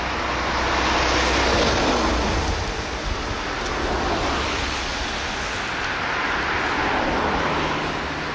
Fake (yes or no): no